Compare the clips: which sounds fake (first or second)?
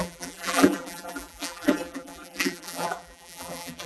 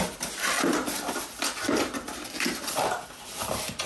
first